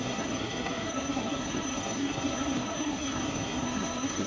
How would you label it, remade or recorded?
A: remade